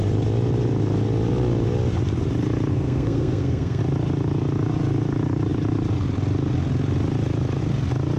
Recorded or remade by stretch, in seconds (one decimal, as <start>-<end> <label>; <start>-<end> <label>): 0.0-2.7 recorded; 2.7-3.8 remade; 3.8-8.2 recorded